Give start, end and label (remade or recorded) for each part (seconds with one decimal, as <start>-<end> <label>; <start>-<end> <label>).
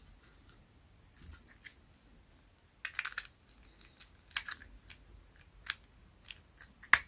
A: 0.0-7.1 recorded